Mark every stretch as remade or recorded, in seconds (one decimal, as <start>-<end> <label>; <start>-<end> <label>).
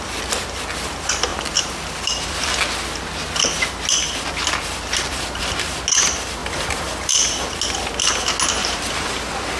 0.0-6.4 recorded; 6.4-7.5 remade; 7.5-8.6 recorded; 8.6-9.2 remade; 9.2-9.6 recorded